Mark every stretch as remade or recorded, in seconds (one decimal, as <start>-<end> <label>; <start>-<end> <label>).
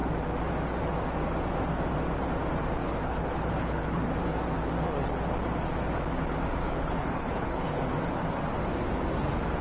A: 0.0-2.8 recorded; 2.8-4.1 remade; 4.1-6.6 recorded; 6.6-7.8 remade; 7.8-9.6 recorded